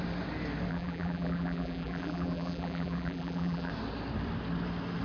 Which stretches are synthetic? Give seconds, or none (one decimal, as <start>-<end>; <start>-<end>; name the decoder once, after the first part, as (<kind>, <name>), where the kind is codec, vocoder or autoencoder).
0.7-3.7 (vocoder, BigVGAN v2)